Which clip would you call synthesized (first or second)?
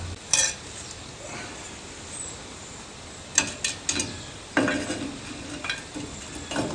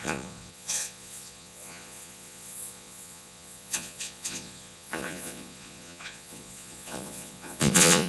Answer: second